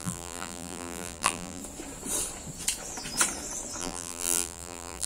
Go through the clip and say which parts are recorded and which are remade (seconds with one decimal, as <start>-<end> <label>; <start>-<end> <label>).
0.0-1.6 remade; 1.6-3.8 recorded; 3.8-5.1 remade